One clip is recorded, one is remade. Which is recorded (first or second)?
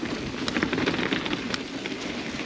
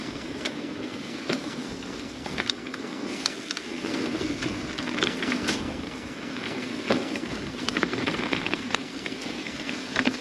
first